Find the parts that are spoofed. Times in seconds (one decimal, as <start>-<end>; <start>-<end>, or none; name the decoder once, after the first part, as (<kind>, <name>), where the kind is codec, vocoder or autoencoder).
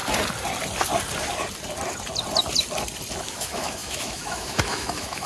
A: 3.2-5.3 (autoencoder, DAC-VAE)